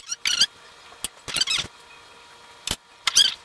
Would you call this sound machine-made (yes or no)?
no